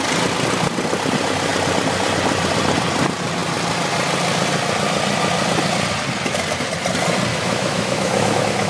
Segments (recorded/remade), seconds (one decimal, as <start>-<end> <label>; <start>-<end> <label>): 0.0-7.3 recorded; 7.3-8.7 remade